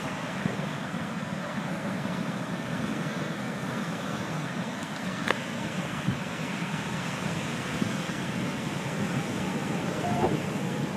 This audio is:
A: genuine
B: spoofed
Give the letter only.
B